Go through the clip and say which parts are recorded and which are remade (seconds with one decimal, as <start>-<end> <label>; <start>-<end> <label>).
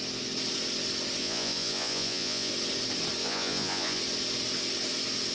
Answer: 0.0-1.2 recorded; 1.2-2.5 remade; 2.5-3.2 recorded; 3.2-4.0 remade; 4.0-5.3 recorded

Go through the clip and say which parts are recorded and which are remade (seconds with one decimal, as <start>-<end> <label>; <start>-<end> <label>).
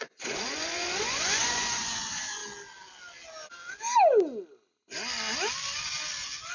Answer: 0.0-2.4 remade; 2.4-6.5 recorded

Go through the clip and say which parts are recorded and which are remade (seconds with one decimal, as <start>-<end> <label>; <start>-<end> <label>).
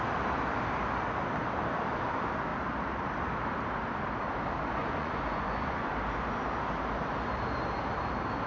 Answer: 0.0-4.8 recorded; 4.8-5.9 remade; 5.9-8.5 recorded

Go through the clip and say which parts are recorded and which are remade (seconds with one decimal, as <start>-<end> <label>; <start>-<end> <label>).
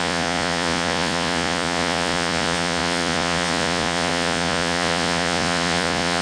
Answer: 0.0-6.2 remade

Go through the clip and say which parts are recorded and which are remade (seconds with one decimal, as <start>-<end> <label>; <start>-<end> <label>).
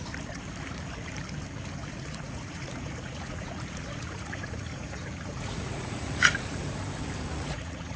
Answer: 0.0-1.8 recorded; 1.8-6.6 remade; 6.6-7.3 recorded; 7.3-8.0 remade